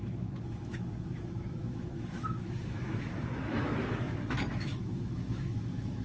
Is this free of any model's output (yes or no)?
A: no